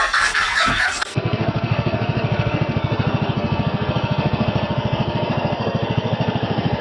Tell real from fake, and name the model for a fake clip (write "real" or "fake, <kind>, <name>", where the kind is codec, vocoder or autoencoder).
fake, codec, SNAC